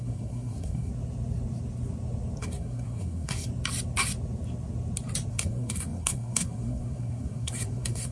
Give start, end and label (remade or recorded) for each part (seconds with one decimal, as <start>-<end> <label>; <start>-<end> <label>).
0.0-0.9 remade; 0.9-2.4 recorded; 2.4-3.5 remade; 3.5-5.3 recorded; 5.3-8.1 remade